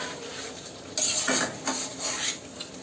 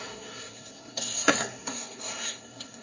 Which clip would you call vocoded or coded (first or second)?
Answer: second